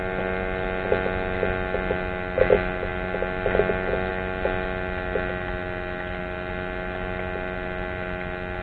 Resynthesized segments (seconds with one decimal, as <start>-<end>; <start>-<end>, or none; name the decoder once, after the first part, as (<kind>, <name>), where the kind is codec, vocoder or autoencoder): none